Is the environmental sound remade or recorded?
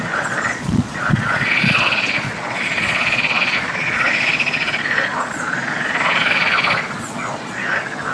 remade